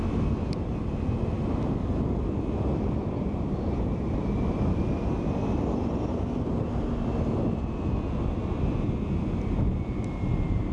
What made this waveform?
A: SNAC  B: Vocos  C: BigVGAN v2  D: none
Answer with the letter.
D